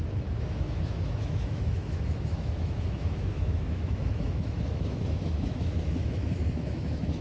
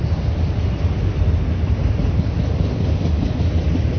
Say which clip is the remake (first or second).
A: first